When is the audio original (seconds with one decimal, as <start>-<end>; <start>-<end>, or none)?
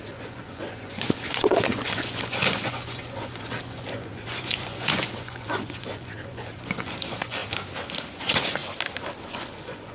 7.4-8.1; 8.6-9.3